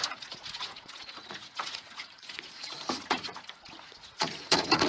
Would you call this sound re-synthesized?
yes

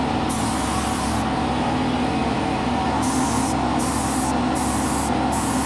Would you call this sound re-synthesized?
no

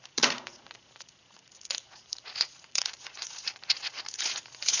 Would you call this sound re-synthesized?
yes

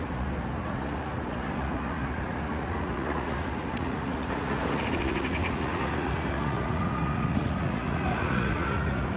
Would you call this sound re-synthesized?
yes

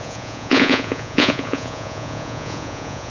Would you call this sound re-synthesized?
yes